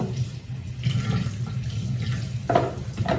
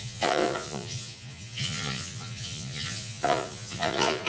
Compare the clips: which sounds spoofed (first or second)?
second